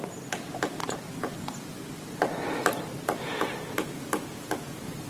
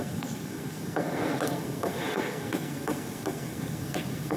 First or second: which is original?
first